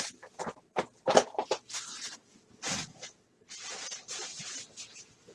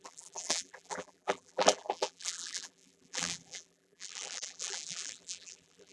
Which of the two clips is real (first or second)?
first